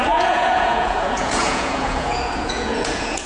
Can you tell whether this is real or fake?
fake